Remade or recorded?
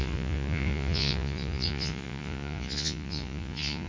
remade